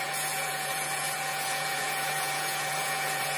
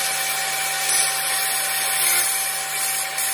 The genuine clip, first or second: second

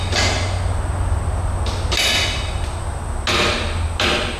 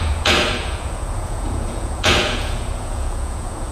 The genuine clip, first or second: first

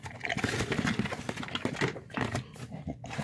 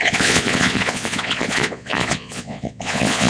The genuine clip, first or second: first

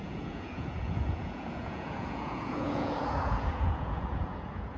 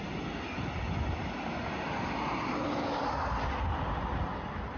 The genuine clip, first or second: second